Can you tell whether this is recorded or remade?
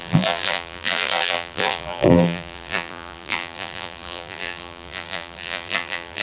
remade